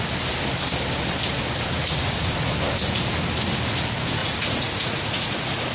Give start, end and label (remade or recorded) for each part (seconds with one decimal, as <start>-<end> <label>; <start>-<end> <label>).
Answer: 0.0-1.8 recorded; 1.8-2.5 remade; 2.5-4.2 recorded; 4.2-5.7 remade